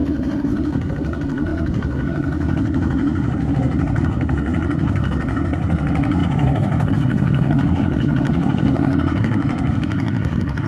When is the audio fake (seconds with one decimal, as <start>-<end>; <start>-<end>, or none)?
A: 0.0-10.7